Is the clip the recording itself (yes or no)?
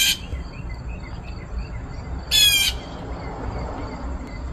yes